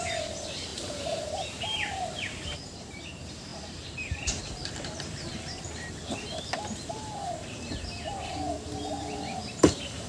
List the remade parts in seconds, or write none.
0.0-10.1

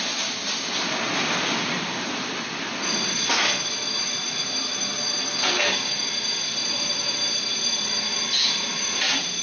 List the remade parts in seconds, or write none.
none

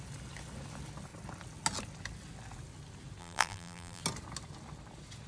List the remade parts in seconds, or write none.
3.2-4.0

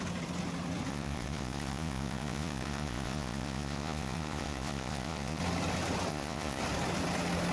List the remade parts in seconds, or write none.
0.9-5.4; 6.1-6.6

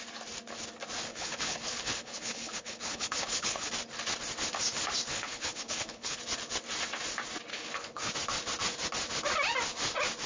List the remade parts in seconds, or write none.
1.1-3.7; 5.1-6.2; 7.5-8.1

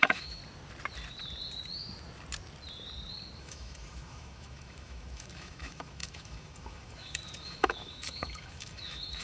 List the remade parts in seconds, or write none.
0.0-0.4; 3.4-9.2

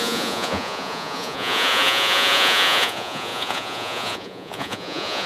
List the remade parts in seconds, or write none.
0.0-5.3